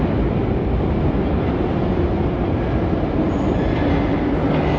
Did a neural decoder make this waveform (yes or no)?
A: no